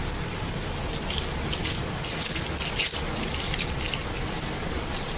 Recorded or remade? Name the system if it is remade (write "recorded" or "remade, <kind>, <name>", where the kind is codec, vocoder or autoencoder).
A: recorded